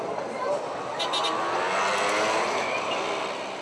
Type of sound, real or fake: real